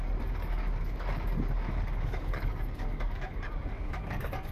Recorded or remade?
remade